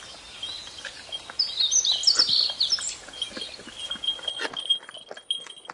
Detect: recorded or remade recorded